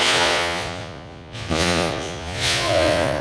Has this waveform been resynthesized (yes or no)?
yes